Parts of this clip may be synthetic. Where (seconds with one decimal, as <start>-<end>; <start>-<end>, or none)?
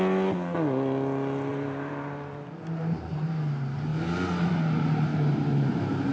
1.5-3.4; 5.1-6.1